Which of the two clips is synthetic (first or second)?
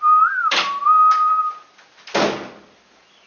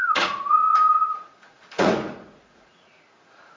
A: second